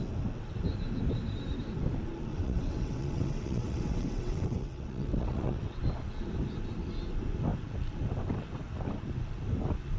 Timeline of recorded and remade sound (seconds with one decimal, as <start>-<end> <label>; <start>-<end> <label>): 0.0-2.3 recorded; 2.3-5.8 remade; 5.8-10.0 recorded